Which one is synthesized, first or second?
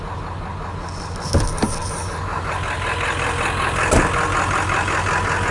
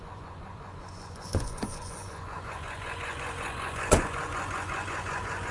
second